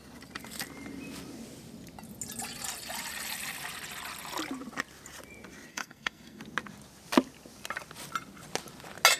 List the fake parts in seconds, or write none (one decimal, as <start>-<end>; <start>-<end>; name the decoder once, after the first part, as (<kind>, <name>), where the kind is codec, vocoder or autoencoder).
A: 5.7-6.4 (codec, SNAC)